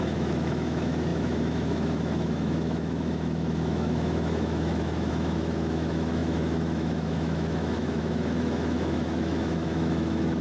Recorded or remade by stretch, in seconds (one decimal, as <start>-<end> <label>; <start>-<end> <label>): 0.0-10.4 remade